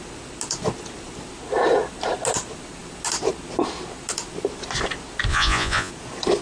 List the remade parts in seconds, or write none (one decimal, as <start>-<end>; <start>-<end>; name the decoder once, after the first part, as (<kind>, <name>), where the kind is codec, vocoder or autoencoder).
5.3-5.9 (vocoder, Vocos)